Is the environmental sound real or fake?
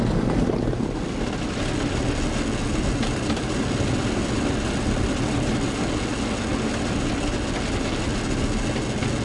real